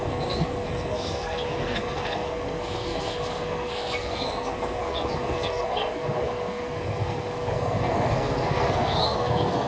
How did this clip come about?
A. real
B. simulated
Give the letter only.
B